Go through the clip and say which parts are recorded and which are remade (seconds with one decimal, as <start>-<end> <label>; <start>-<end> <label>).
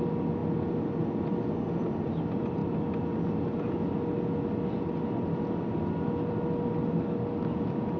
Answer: 0.0-8.0 recorded